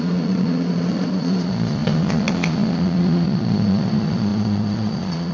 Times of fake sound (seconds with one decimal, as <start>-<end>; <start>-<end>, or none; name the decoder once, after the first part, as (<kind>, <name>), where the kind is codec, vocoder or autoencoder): 0.0-5.3 (vocoder, Vocos)